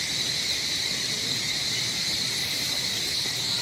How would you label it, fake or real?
real